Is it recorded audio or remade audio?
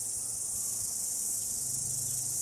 recorded